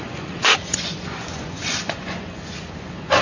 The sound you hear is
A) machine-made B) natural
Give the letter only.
A